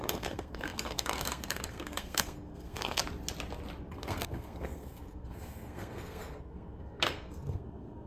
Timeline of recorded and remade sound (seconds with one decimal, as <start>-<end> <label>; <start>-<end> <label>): 0.0-3.0 remade; 3.0-3.9 recorded; 3.9-8.1 remade